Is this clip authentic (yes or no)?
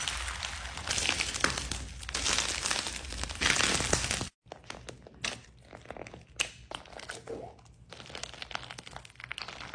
yes